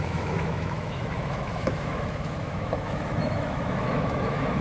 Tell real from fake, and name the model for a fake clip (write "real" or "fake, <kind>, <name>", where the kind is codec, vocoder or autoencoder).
fake, autoencoder, DAC-VAE